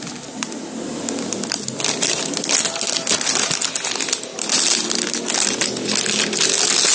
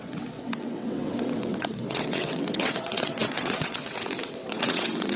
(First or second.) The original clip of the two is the first